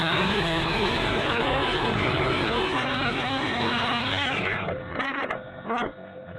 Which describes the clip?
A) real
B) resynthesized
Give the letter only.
B